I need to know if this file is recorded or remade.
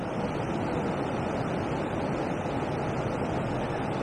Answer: recorded